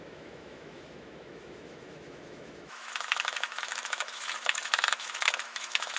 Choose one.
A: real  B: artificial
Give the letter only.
B